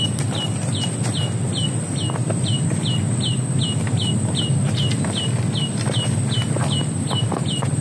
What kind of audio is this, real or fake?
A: real